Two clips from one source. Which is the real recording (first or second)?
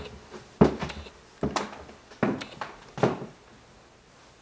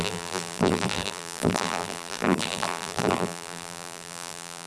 first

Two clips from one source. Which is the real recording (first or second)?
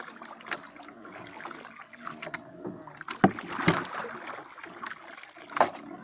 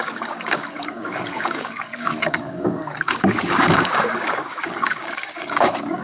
first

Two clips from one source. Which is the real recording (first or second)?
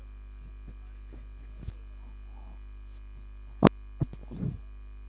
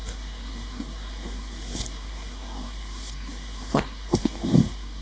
first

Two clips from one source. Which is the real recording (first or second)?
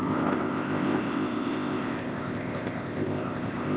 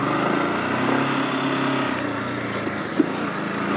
second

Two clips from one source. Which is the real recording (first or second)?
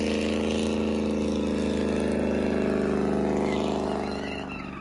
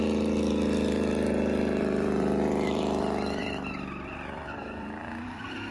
first